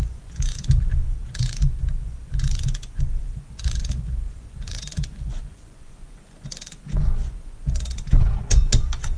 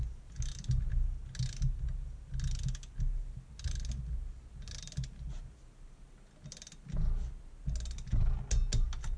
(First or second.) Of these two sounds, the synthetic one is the first